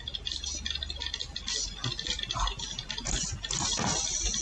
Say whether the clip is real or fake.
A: real